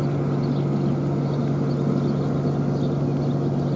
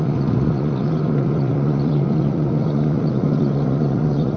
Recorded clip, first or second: first